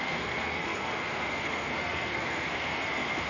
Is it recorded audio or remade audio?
remade